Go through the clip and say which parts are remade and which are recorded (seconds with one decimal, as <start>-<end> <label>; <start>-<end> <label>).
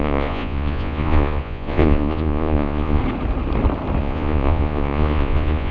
0.0-3.0 remade; 3.0-4.0 recorded; 4.0-5.7 remade